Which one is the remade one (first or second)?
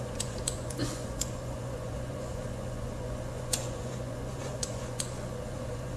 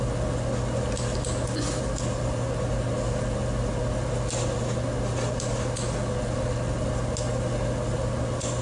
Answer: first